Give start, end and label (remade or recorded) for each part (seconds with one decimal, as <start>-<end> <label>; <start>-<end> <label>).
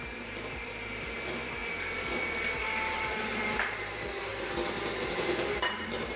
0.0-1.6 remade; 1.6-3.1 recorded; 3.1-4.3 remade; 4.3-5.1 recorded; 5.1-6.2 remade